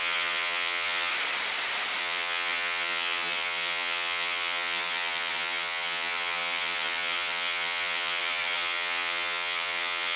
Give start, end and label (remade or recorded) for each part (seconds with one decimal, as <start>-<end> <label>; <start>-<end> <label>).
0.0-1.1 remade; 1.1-2.0 recorded; 2.0-10.2 remade